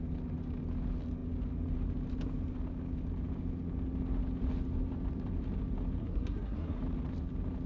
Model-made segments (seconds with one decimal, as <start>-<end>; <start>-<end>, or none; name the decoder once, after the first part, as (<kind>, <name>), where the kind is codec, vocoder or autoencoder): 6.0-6.8 (codec, SNAC)